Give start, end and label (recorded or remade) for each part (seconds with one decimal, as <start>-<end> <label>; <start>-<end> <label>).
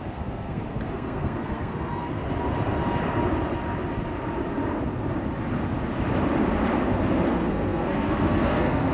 0.0-2.2 remade; 2.2-7.3 recorded; 7.3-8.9 remade